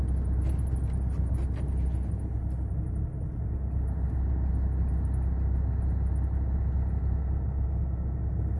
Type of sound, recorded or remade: recorded